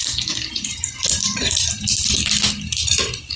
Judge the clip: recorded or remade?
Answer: remade